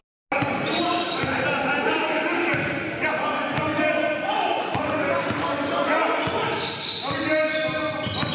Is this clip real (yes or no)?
yes